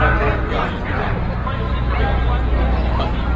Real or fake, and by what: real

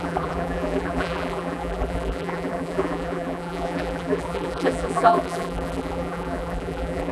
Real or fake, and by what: fake, vocoder, BigVGAN v2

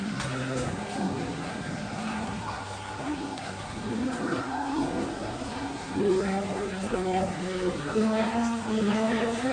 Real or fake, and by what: fake, codec, SNAC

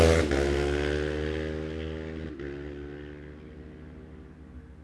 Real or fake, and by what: real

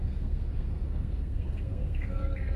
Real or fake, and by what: fake, codec, SNAC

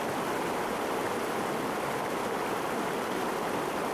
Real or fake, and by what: real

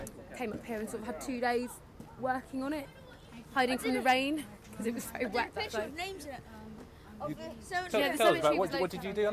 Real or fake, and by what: real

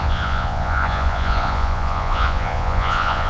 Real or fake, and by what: fake, vocoder, Vocos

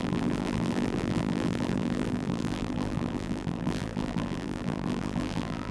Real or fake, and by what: fake, vocoder, BigVGAN v2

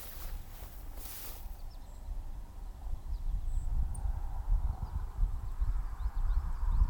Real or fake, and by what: real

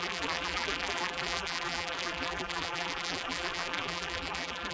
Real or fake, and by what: fake, vocoder, BigVGAN v2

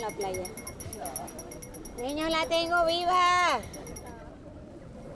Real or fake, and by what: real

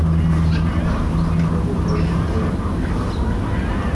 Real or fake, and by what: real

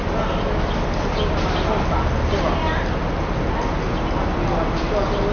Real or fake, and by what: real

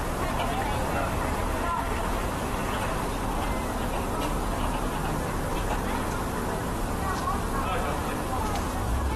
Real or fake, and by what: real